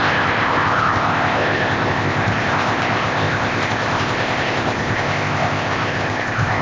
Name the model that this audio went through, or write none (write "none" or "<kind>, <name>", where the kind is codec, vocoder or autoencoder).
codec, ZipCodec